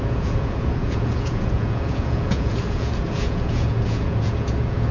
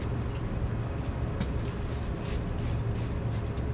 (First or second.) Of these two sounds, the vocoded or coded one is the first